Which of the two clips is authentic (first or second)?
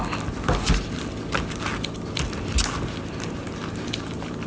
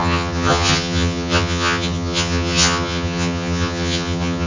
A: first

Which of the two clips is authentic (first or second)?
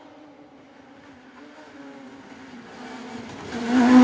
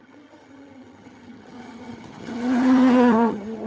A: first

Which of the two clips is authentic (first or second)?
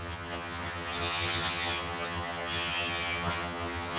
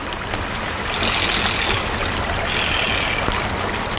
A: second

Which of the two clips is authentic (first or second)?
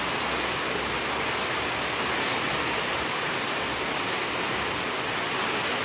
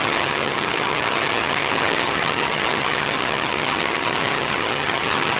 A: first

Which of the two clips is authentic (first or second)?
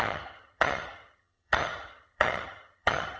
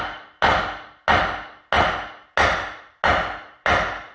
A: second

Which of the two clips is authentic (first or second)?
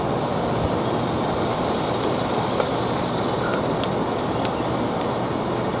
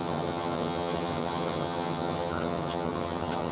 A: first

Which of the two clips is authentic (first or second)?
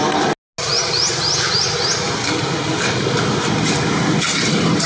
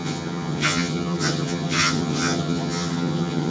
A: first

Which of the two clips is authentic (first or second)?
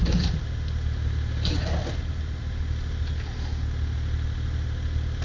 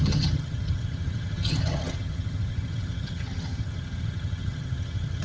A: first